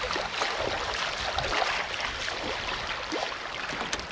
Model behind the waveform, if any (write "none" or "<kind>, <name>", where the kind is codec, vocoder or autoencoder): none